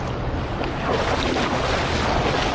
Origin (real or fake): real